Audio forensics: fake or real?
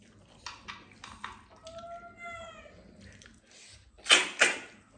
real